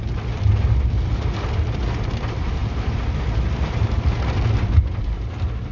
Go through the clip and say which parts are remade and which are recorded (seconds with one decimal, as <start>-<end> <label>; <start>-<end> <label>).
0.0-5.7 recorded